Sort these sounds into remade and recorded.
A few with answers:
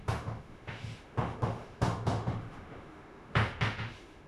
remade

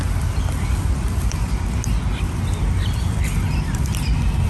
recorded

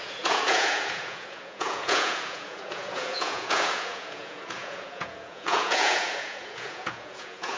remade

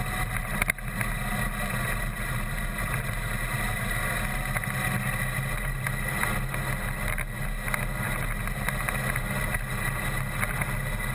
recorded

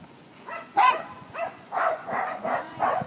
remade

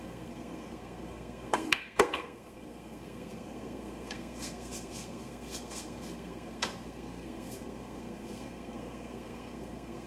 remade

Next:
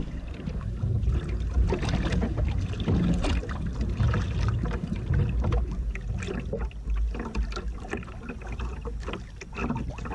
recorded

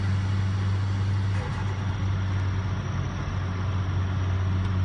recorded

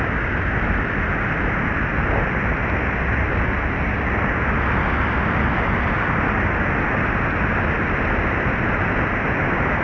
recorded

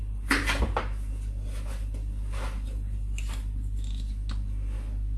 recorded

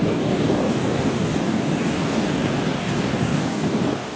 remade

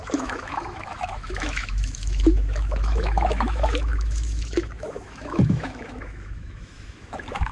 remade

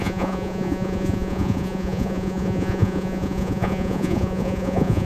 remade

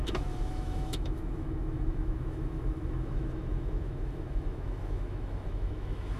remade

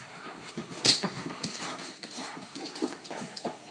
remade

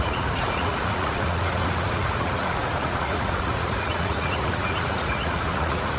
remade